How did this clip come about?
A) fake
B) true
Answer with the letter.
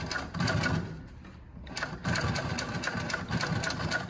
B